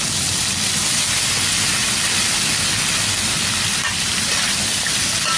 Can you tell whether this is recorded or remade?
recorded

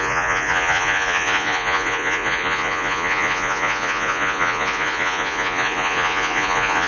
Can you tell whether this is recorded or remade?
remade